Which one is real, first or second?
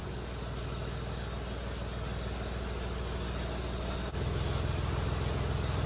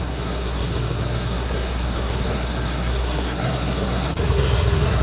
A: first